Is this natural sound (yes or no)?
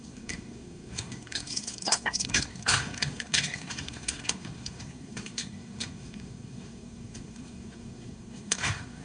no